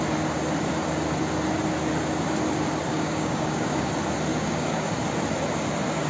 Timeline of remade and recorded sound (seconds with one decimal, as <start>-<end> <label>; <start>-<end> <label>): 0.0-2.9 recorded; 2.9-3.9 remade; 3.9-4.3 recorded; 4.3-4.9 remade; 4.9-6.1 recorded